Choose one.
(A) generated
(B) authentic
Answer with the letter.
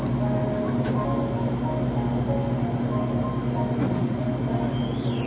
B